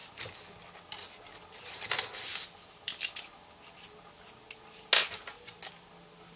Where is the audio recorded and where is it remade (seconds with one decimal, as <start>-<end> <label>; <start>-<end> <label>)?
0.0-6.4 recorded